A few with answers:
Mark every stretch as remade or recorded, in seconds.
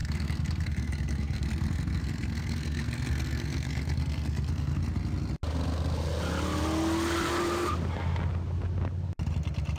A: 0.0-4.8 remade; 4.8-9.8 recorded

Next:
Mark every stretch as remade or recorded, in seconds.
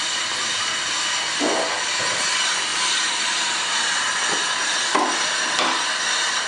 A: 0.0-6.5 recorded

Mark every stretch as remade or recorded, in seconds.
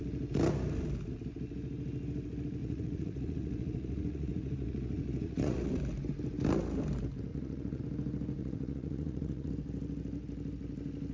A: 0.0-2.6 recorded; 2.6-5.7 remade; 5.7-7.3 recorded; 7.3-7.8 remade; 7.8-8.4 recorded; 8.4-9.5 remade; 9.5-11.1 recorded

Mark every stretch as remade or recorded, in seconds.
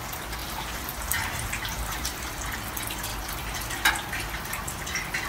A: 0.0-0.4 recorded; 0.4-2.3 remade; 2.3-5.3 recorded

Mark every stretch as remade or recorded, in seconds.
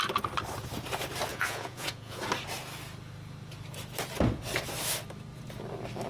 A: 0.0-1.3 recorded; 1.3-2.2 remade; 2.2-6.1 recorded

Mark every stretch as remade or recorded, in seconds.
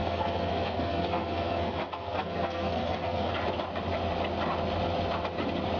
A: 0.0-3.3 remade; 3.3-5.8 recorded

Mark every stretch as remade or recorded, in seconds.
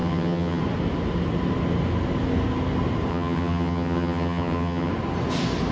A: 0.0-0.6 remade; 0.6-3.1 recorded; 3.1-4.9 remade; 4.9-5.7 recorded